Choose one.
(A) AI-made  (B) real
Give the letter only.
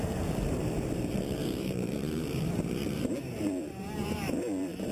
A